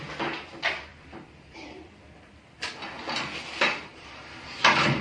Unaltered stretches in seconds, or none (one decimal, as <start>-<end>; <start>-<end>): 0.0-0.9; 2.3-3.9; 4.6-5.0